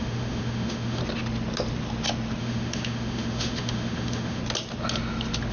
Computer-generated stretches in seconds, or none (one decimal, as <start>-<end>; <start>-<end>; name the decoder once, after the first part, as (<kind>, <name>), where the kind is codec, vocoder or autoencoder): 0.0-1.0 (autoencoder, DAC-VAE); 2.4-4.4